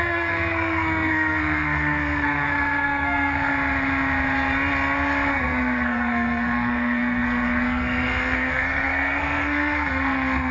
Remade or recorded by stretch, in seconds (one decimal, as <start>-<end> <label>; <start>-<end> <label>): 0.0-3.5 remade; 3.5-5.3 recorded; 5.3-10.5 remade